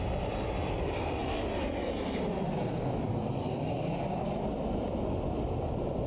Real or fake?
real